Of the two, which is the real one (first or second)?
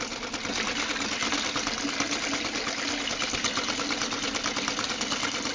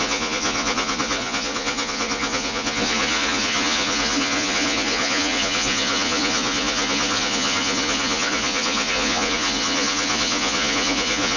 first